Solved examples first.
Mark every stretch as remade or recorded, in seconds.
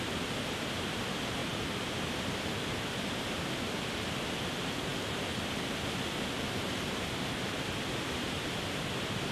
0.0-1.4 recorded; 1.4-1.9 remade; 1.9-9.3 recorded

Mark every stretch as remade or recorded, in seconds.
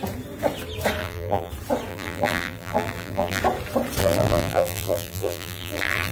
0.0-1.0 recorded; 1.0-1.5 remade; 1.5-1.9 recorded; 1.9-3.4 remade; 3.4-4.0 recorded; 4.0-6.1 remade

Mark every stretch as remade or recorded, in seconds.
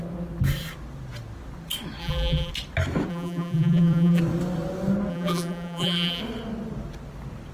0.0-2.0 recorded; 2.0-2.5 remade; 2.5-3.1 recorded; 3.1-4.2 remade; 4.2-5.1 recorded; 5.1-6.2 remade; 6.2-7.5 recorded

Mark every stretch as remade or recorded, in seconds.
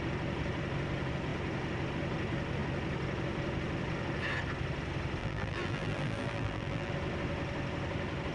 0.0-5.2 recorded; 5.2-6.9 remade; 6.9-8.3 recorded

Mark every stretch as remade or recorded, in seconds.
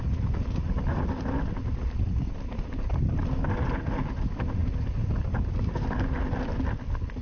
0.0-0.9 recorded; 0.9-3.2 remade; 3.2-7.2 recorded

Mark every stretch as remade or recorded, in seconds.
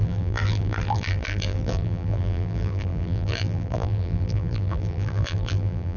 0.0-6.0 remade